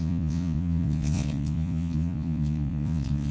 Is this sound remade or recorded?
remade